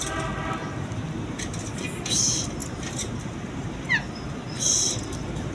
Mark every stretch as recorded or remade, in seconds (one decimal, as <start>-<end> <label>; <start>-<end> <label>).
0.0-2.6 recorded; 2.6-4.1 remade; 4.1-5.5 recorded